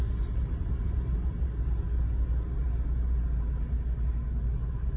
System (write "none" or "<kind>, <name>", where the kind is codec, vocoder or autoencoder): none